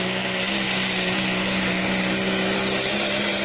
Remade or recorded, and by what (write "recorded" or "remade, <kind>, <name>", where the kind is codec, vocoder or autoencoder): recorded